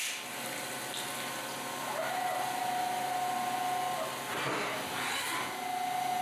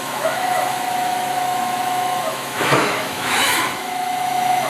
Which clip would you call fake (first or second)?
second